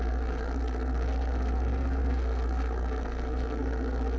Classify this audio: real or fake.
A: fake